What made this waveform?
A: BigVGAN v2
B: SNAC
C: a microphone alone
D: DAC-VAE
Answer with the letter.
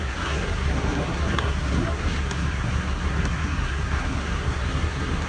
B